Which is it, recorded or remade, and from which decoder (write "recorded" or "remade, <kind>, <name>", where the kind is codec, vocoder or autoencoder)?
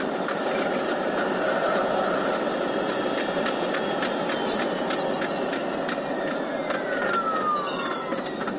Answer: recorded